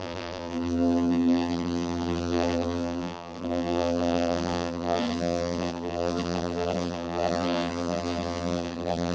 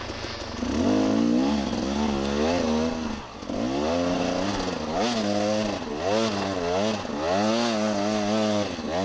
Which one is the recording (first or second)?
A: second